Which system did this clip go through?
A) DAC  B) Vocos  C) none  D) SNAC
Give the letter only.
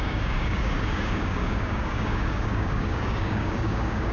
A